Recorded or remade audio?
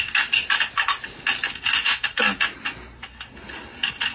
recorded